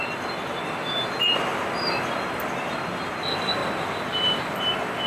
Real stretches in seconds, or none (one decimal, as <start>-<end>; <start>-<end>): 0.0-3.6